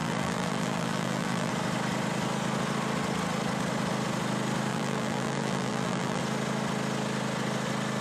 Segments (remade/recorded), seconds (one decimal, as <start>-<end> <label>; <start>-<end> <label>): 0.0-1.5 remade; 1.5-4.7 recorded; 4.7-6.2 remade; 6.2-8.0 recorded